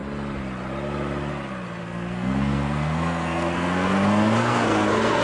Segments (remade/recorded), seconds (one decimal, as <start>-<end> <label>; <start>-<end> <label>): 0.0-1.8 recorded; 1.8-5.2 remade